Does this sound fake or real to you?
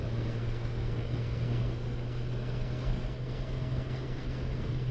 fake